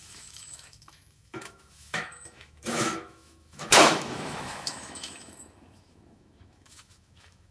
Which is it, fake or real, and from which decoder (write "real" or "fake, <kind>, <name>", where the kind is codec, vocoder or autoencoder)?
fake, autoencoder, DAC-VAE